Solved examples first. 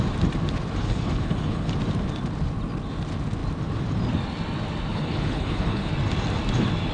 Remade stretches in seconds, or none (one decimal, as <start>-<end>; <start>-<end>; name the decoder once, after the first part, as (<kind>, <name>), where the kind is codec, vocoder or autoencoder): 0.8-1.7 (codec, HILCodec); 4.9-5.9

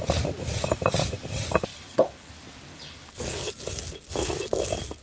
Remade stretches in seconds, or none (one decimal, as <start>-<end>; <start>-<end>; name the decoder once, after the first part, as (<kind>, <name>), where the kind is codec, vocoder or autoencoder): 1.7-2.3 (codec, HILCodec); 2.7-3.5

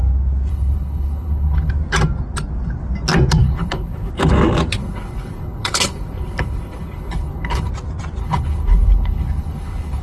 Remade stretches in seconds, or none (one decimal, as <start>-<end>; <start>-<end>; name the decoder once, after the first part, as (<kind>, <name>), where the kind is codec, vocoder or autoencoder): 0.5-1.7 (codec, HILCodec); 3.4-4.1; 4.8-7.7; 8.2-10.0

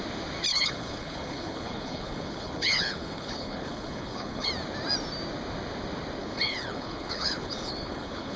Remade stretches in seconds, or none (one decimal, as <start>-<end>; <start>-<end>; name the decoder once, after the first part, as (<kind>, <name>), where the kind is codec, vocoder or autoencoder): 0.5-4.5 (codec, HILCodec); 6.2-8.4

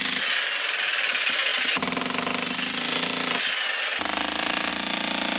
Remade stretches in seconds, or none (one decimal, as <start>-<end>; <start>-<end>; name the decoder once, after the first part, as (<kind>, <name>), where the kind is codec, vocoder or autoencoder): none

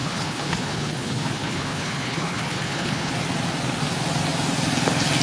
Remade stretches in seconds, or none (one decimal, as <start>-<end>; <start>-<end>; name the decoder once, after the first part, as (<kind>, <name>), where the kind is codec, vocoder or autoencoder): 0.0-3.1 (codec, HILCodec)

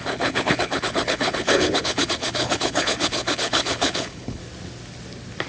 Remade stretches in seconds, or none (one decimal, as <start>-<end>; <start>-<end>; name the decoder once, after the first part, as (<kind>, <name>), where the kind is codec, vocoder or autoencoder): 0.0-4.4 (codec, HILCodec)

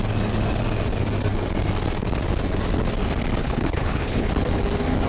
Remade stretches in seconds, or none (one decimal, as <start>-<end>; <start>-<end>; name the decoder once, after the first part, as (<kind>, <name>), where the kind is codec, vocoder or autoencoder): 3.4-4.3 (codec, HILCodec)